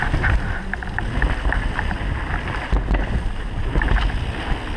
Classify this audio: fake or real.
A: real